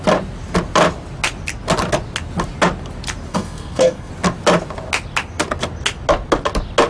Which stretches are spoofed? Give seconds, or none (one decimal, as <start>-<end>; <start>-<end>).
3.3-4.1